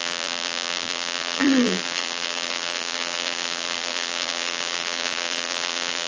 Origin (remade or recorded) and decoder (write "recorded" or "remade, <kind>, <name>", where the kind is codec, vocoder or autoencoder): remade, vocoder, BigVGAN v2